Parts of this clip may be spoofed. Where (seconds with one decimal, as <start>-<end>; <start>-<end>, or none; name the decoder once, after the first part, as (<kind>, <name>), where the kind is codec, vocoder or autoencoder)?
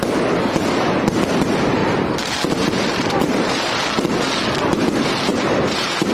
1.8-3.8 (vocoder, BigVGAN v2); 5.3-6.1